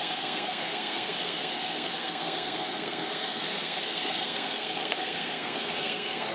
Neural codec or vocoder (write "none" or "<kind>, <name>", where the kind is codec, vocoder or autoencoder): codec, SNAC